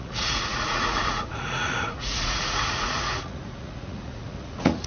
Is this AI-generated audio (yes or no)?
yes